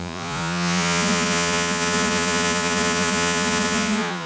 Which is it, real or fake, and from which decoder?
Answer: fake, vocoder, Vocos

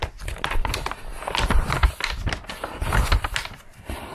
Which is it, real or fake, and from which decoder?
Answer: real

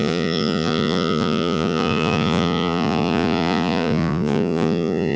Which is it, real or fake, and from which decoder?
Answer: fake, vocoder, Vocos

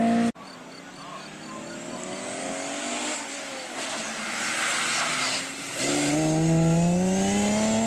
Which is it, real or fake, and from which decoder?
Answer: real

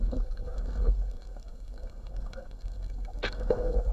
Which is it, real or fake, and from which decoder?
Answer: fake, codec, SNAC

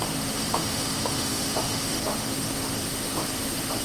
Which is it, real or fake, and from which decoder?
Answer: fake, autoencoder, DAC-VAE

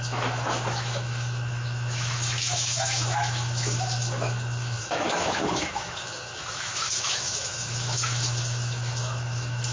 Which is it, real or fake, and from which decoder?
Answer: fake, autoencoder, DAC-VAE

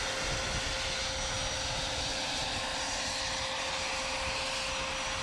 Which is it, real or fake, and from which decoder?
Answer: real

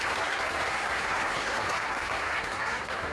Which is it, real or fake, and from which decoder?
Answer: fake, codec, SNAC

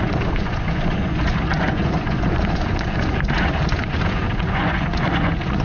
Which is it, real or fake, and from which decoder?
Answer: fake, vocoder, Vocos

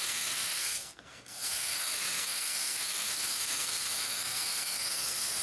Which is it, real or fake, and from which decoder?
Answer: fake, codec, SNAC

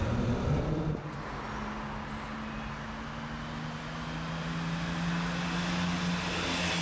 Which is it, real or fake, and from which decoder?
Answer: real